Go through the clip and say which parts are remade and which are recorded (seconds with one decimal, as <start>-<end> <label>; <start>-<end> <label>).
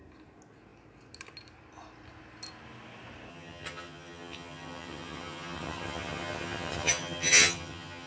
0.0-3.3 recorded; 3.3-8.1 remade